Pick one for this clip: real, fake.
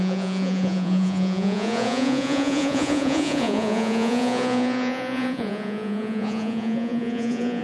fake